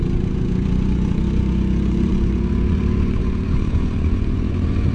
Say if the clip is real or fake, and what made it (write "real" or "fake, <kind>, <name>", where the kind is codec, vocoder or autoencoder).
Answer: fake, vocoder, Vocos